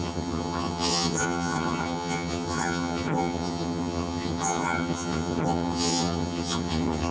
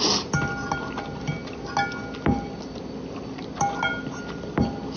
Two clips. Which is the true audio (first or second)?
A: second